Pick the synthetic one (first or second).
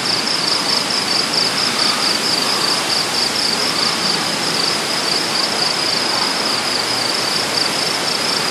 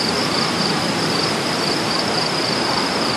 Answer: second